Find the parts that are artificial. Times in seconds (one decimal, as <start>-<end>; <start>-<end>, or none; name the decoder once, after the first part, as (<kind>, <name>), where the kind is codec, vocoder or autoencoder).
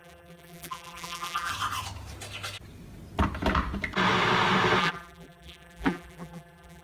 0.0-1.5 (vocoder, BigVGAN v2); 4.8-6.8